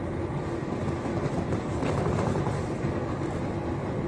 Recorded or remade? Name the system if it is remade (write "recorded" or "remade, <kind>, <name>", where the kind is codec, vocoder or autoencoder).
recorded